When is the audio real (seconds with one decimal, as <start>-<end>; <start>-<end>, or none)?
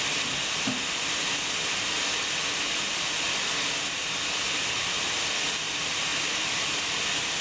0.0-7.4